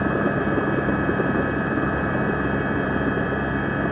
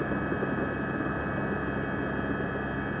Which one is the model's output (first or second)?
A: first